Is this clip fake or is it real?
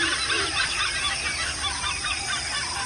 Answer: fake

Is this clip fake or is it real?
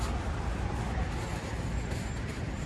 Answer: fake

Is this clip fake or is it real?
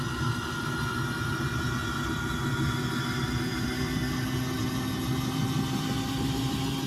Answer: real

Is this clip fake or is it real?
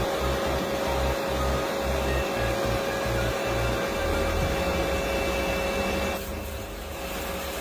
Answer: real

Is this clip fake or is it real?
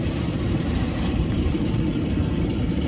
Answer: fake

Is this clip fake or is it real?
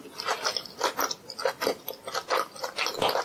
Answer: real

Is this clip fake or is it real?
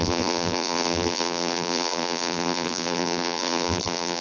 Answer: fake